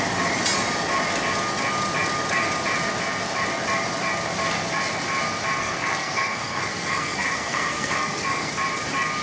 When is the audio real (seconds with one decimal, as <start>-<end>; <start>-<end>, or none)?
0.0-5.6; 8.5-9.2

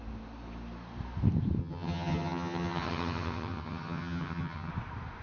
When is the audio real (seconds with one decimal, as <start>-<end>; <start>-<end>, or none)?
0.0-1.6; 4.7-5.2

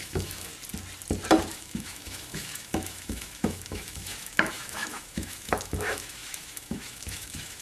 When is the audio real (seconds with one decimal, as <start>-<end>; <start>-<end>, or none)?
0.5-1.5